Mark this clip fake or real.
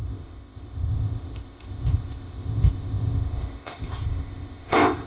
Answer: fake